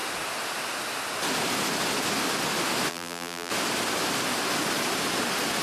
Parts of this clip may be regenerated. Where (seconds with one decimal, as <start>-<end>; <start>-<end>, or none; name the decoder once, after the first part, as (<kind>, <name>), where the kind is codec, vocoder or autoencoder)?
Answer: 2.9-3.5 (vocoder, BigVGAN v2)